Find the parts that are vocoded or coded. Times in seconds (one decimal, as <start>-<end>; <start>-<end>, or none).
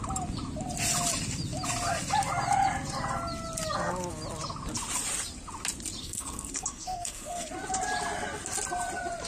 6.0-7.5